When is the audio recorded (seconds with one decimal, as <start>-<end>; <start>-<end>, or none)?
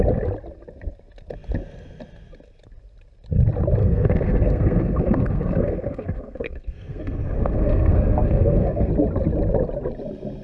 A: 0.0-3.8; 8.9-10.4